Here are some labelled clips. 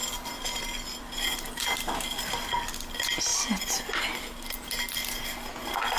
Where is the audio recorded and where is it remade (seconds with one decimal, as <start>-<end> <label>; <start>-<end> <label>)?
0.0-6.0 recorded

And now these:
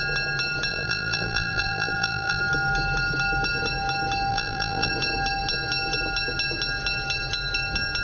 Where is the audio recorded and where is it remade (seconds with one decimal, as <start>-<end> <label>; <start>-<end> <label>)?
0.0-0.7 recorded; 0.7-2.4 remade; 2.4-4.3 recorded; 4.3-4.9 remade; 4.9-8.0 recorded

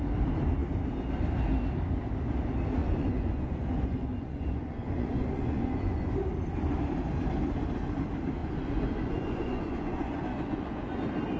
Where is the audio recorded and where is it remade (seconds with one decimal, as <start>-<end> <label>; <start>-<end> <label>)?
0.0-2.8 recorded; 2.8-6.1 remade; 6.1-8.4 recorded; 8.4-11.0 remade; 11.0-11.4 recorded

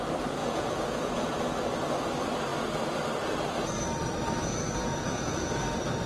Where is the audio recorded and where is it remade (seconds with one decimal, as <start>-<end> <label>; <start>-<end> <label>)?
0.0-0.4 recorded; 0.4-1.3 remade; 1.3-4.8 recorded; 4.8-5.4 remade; 5.4-6.1 recorded

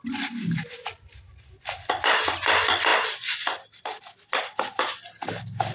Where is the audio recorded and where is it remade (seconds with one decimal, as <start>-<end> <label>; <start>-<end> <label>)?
0.0-5.7 recorded